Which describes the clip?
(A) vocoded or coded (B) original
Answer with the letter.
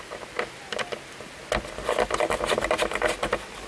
B